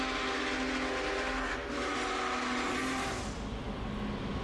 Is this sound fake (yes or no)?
no